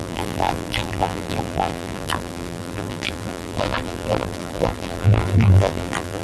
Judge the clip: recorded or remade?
remade